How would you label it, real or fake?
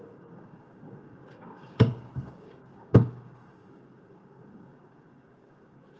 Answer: fake